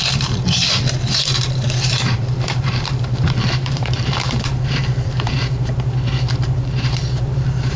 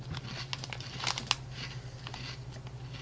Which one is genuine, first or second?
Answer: second